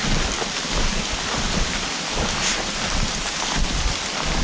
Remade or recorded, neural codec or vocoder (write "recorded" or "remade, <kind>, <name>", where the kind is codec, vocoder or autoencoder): remade, vocoder, BigVGAN v2